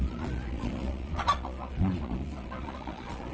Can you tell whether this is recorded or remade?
remade